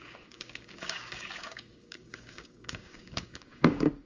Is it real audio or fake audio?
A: fake